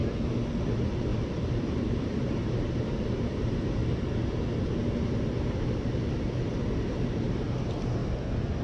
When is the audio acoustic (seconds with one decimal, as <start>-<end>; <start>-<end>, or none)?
0.0-0.6; 3.8-6.0; 8.0-8.6